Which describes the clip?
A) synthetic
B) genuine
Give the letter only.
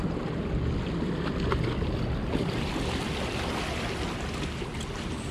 B